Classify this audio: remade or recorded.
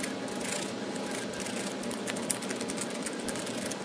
recorded